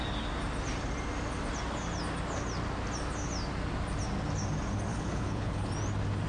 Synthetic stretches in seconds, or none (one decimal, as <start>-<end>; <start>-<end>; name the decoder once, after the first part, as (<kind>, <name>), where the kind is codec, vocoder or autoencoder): 4.9-5.7 (codec, HILCodec)